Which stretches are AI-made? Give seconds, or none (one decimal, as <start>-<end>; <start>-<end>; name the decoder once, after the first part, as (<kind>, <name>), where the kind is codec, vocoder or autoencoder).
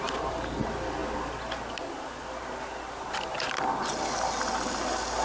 0.0-1.0 (vocoder, BigVGAN v2); 4.1-5.2